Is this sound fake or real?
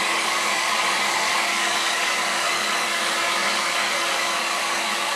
fake